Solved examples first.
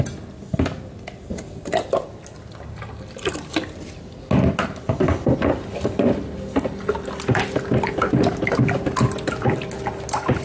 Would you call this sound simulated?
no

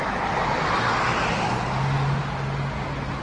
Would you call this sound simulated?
no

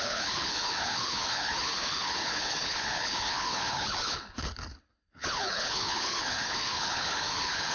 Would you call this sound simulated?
yes